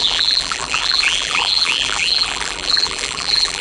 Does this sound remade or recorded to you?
remade